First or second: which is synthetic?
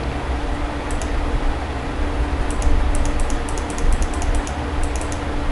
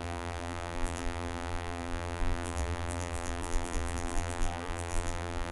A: second